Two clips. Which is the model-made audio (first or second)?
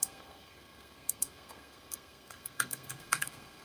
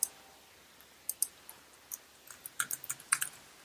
first